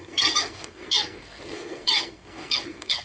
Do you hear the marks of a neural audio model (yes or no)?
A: yes